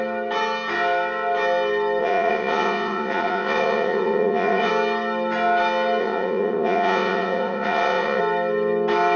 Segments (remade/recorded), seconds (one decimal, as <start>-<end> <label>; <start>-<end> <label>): 0.0-2.0 recorded; 2.0-4.7 remade; 4.7-6.0 recorded; 6.0-8.2 remade; 8.2-9.2 recorded